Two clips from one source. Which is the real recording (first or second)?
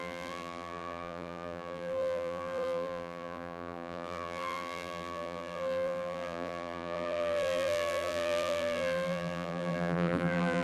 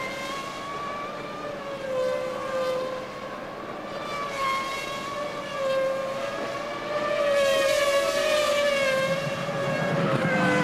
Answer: second